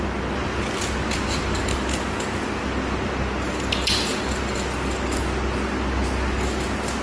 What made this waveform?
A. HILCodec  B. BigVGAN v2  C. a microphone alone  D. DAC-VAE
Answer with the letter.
C